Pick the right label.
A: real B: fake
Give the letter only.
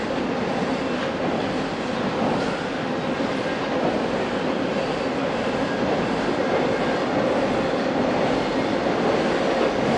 A